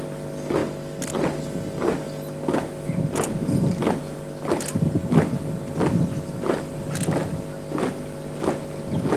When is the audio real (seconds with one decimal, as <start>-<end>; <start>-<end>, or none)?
0.0-9.2